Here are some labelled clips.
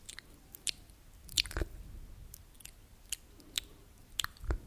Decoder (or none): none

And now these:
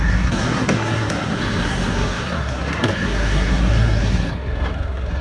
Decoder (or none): codec, SNAC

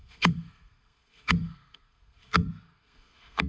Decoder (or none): codec, SNAC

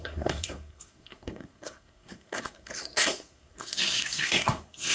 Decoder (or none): codec, SNAC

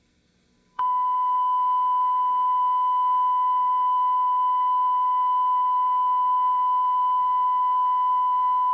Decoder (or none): codec, SNAC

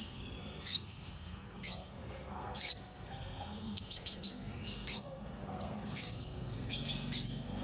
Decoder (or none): codec, SNAC